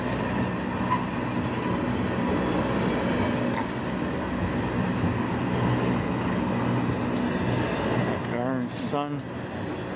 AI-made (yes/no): no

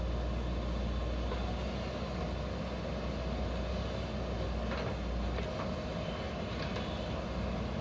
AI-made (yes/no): no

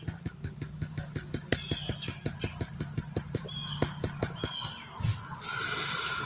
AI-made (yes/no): no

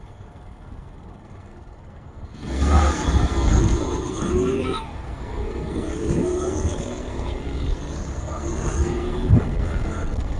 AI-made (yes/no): yes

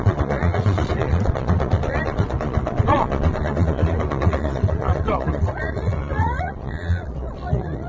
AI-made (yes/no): yes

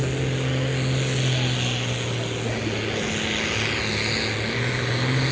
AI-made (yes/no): no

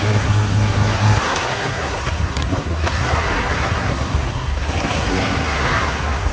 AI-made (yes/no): yes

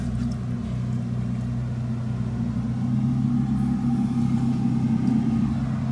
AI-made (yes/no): no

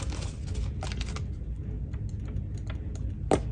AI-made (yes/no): no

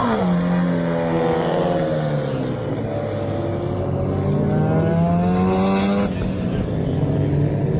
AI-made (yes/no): no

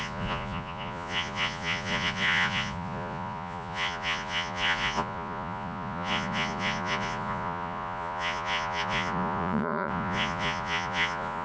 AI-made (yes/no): yes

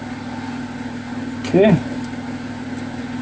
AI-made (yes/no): no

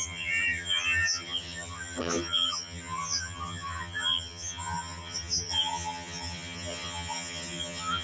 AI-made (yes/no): yes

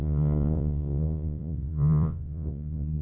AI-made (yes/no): yes